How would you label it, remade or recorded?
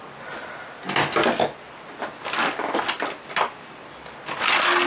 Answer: recorded